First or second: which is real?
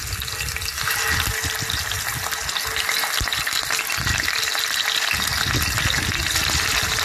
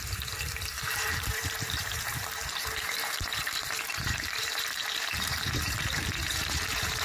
first